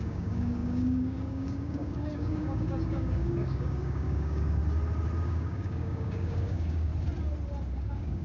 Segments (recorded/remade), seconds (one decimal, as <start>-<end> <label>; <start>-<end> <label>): 0.0-4.6 remade; 4.6-5.2 recorded; 5.2-6.9 remade; 6.9-7.7 recorded; 7.7-8.2 remade

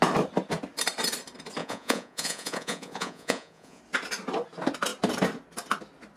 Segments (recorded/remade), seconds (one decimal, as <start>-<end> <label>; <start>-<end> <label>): 0.0-1.6 recorded; 1.6-3.8 remade; 3.8-6.2 recorded

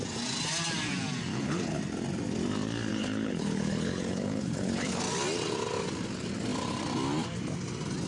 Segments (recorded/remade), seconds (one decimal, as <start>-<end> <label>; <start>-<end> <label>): 0.0-1.3 recorded; 1.3-1.8 remade; 1.8-2.9 recorded; 2.9-5.0 remade; 5.0-8.1 recorded

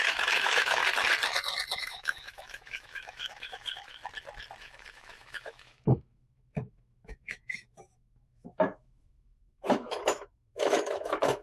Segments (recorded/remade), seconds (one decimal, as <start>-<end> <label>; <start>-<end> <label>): 0.0-0.8 remade; 0.8-1.8 recorded; 1.8-4.0 remade; 4.0-4.6 recorded; 4.6-11.4 remade

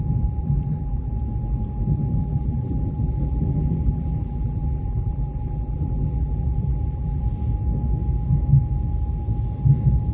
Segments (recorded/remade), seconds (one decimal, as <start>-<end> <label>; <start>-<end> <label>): 0.0-0.4 recorded; 0.4-1.1 remade; 1.1-2.2 recorded; 2.2-7.2 remade; 7.2-10.1 recorded

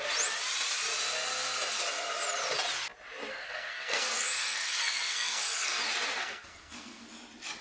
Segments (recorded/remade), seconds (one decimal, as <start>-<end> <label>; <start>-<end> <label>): 0.0-3.3 recorded; 3.3-5.8 remade; 5.8-6.2 recorded; 6.2-7.0 remade; 7.0-7.6 recorded